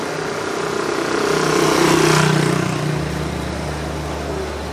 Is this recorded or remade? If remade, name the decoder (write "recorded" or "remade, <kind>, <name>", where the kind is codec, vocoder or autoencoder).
recorded